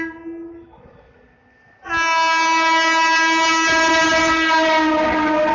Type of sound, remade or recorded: recorded